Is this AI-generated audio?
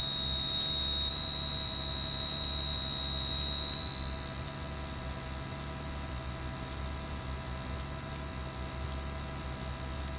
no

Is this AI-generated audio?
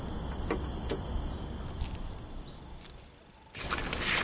no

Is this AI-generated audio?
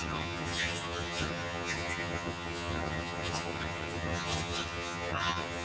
yes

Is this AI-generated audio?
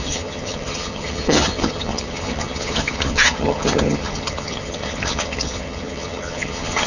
yes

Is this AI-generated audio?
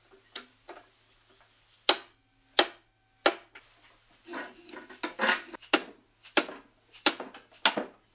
no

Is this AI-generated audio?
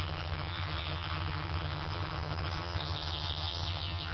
yes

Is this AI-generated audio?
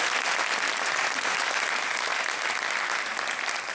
no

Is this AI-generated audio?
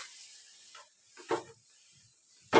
no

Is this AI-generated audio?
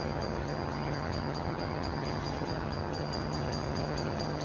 yes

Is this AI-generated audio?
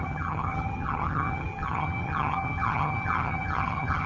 yes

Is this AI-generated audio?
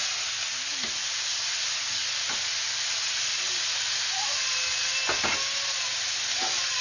no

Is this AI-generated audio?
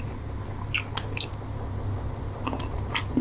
no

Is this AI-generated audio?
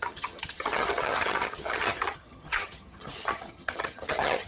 yes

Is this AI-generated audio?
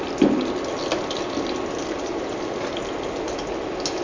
no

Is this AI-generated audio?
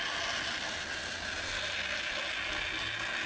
no